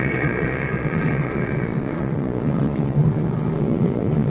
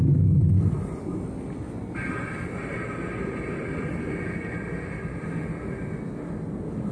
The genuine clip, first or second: second